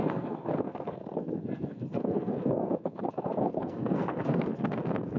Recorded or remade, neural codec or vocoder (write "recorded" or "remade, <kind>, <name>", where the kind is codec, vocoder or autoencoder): remade, codec, SNAC